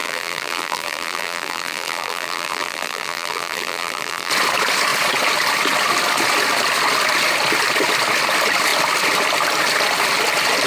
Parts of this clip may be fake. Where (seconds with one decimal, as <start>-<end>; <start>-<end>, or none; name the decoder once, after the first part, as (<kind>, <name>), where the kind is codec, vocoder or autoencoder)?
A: 0.0-4.3 (vocoder, BigVGAN v2)